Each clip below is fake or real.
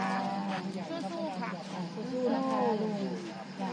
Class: real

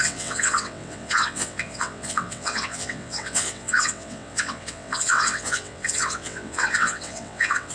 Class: fake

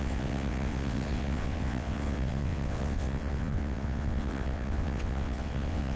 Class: fake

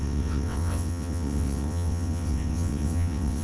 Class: fake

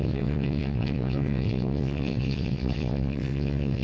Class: fake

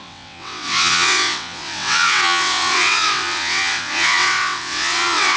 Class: fake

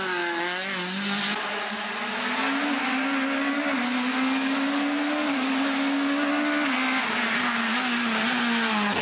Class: real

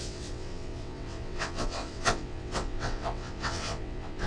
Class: fake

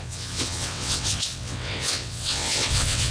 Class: fake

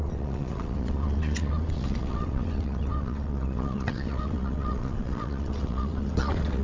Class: fake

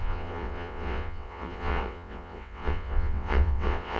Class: fake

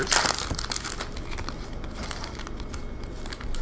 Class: real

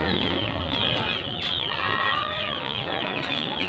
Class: fake